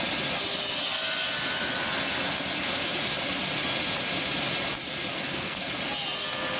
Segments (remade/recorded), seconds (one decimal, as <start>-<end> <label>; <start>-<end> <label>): 0.0-5.1 recorded; 5.1-5.7 remade; 5.7-6.6 recorded